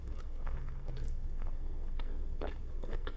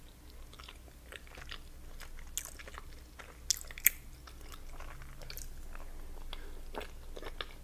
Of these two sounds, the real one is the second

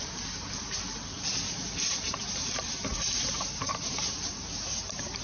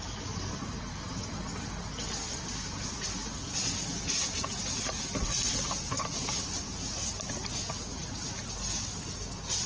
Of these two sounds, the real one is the second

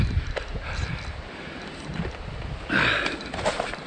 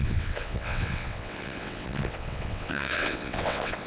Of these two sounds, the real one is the first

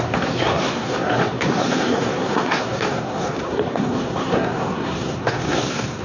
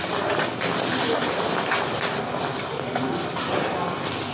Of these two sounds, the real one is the second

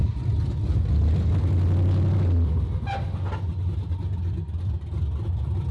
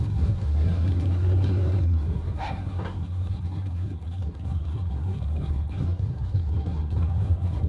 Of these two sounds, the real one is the first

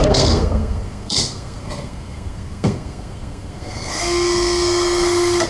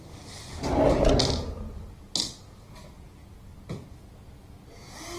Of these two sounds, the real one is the second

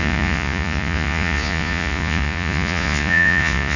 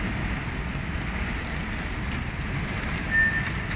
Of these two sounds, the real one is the second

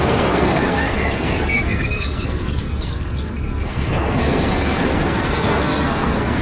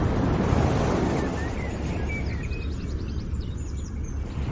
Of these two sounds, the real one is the second